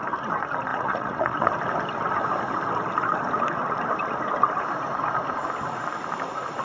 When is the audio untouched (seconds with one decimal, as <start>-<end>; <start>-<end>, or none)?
0.0-0.7; 1.5-6.6